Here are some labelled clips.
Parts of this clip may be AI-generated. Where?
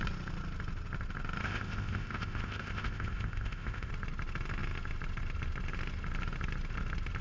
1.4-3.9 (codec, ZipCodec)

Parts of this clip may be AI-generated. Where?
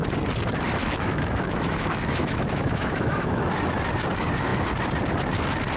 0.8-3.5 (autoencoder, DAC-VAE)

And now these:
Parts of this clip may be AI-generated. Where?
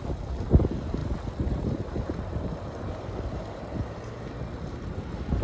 1.0-3.7 (vocoder, BigVGAN v2)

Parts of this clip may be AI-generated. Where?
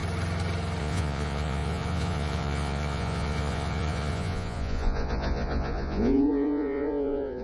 0.8-7.4 (vocoder, Vocos)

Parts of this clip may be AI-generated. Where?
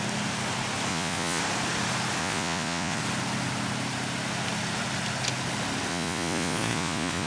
0.9-1.4 (vocoder, Vocos); 2.2-3.0; 5.9-7.3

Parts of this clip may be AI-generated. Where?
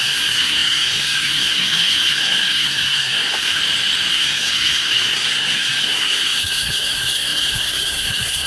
0.0-3.6 (codec, SNAC); 4.1-8.5